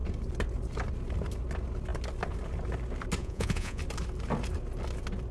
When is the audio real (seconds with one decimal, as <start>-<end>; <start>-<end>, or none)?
0.0-3.2; 3.8-5.3